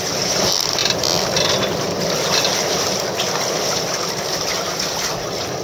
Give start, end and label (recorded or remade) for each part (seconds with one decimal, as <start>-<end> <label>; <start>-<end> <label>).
0.0-5.6 recorded